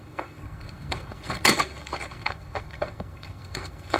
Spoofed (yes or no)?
yes